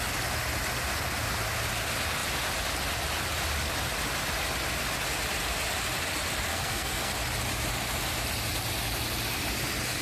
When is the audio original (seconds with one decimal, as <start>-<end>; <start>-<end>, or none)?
0.0-6.5; 7.1-10.0